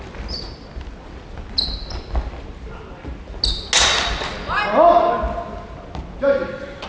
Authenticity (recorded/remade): recorded